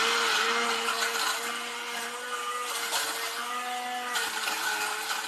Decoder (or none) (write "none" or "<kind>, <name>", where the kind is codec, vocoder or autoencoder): none